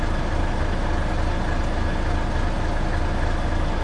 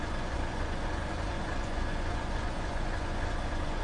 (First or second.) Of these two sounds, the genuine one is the first